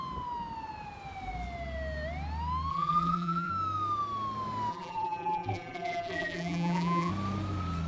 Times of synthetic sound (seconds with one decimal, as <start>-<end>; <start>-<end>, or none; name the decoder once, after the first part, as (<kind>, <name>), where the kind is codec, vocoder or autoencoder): 2.7-3.5 (vocoder, BigVGAN v2); 4.7-7.1

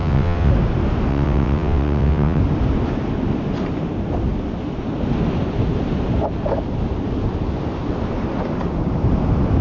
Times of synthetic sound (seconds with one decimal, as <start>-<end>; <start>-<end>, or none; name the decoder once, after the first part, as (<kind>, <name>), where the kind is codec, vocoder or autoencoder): 0.0-0.5 (vocoder, WaveNeXt); 1.1-2.4

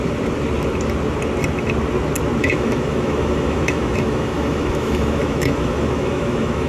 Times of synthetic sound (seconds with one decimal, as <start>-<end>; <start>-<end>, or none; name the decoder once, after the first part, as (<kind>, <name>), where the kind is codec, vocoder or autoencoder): 2.4-6.7 (autoencoder, DAC-VAE)

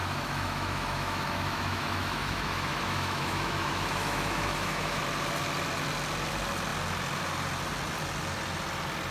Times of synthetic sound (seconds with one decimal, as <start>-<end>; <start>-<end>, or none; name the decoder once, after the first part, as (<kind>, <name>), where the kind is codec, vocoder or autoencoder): 0.0-5.0 (autoencoder, DAC-VAE)

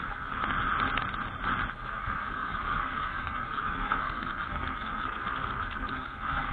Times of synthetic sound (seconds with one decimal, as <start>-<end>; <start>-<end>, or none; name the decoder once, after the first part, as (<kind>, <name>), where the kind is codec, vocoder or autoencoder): 0.0-0.4 (codec, SNAC); 1.7-6.5

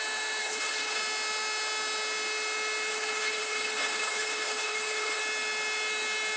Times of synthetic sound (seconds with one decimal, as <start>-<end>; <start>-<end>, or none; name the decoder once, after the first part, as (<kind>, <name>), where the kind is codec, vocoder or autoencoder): 0.4-1.0 (codec, HILCodec); 2.9-5.2